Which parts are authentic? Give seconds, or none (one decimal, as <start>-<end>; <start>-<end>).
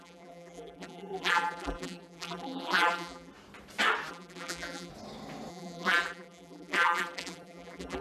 3.3-4.1; 4.9-5.5